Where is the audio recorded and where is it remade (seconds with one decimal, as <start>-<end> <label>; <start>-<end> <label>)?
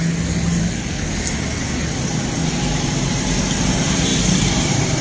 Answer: 0.0-0.6 recorded; 0.6-1.1 remade; 1.1-5.0 recorded